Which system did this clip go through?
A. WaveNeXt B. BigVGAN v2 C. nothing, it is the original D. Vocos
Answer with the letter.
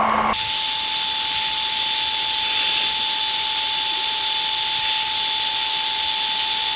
C